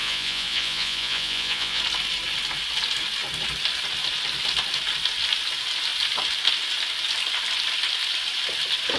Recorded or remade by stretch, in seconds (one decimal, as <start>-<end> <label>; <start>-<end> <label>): 0.0-1.8 remade; 1.8-9.0 recorded